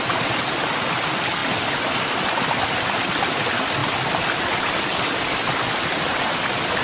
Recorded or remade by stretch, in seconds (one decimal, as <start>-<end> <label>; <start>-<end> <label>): 0.0-6.8 recorded